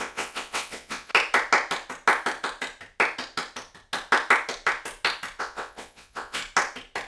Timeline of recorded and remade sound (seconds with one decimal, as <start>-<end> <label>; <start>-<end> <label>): 0.0-1.1 remade; 1.1-5.4 recorded; 5.4-6.4 remade; 6.4-7.1 recorded